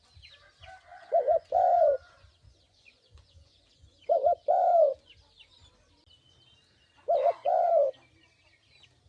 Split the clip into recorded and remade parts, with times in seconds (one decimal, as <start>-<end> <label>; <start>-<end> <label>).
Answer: 0.0-0.9 recorded; 0.9-5.1 remade; 5.1-7.2 recorded; 7.2-7.7 remade; 7.7-9.1 recorded